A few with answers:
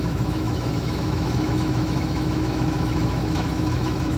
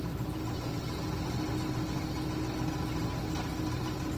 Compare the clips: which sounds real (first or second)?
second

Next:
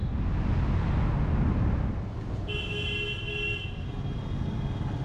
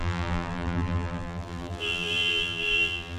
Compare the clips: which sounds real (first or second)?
first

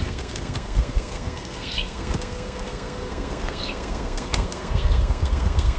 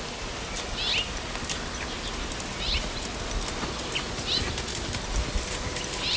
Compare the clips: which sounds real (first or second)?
second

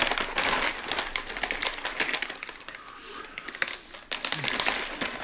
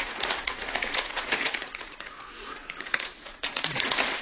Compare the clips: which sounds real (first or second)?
first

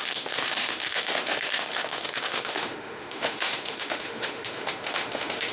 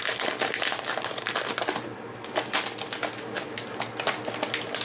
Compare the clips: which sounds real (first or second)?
second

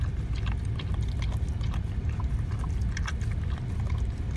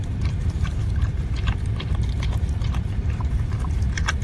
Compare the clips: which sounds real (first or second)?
first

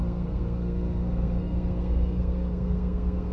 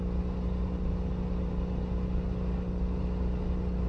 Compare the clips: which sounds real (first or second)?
second